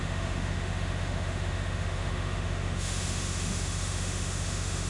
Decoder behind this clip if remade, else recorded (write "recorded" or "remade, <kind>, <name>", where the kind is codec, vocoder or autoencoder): remade, autoencoder, DAC-VAE